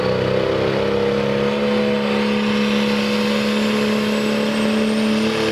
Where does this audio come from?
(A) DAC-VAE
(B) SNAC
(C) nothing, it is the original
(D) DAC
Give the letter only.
C